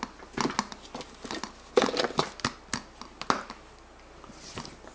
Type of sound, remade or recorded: recorded